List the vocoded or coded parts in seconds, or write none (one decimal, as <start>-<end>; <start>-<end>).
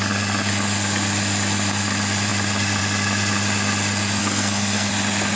4.2-4.9